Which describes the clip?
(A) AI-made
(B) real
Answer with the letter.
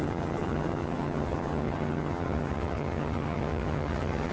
A